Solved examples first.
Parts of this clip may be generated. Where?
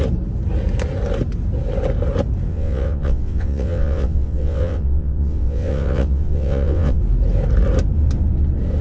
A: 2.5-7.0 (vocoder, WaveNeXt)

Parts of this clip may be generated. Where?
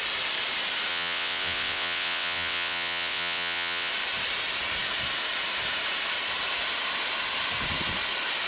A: 0.9-3.9 (vocoder, WaveNeXt)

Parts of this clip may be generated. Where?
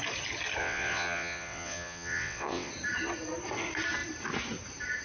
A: 0.6-2.7 (vocoder, WaveNeXt)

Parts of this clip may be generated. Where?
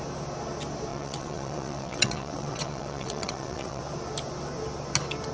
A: 0.9-3.8 (vocoder, WaveNeXt)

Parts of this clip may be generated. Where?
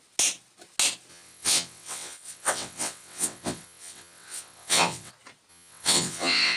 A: 1.1-5.1 (vocoder, WaveNeXt); 5.5-6.6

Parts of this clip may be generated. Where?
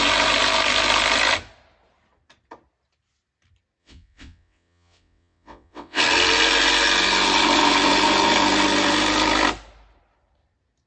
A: 3.8-6.0 (vocoder, WaveNeXt)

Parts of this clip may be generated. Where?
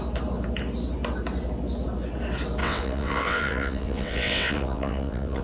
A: 2.6-5.4 (vocoder, WaveNeXt)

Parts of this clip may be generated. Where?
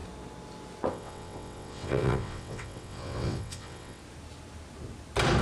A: 0.9-4.0 (vocoder, WaveNeXt)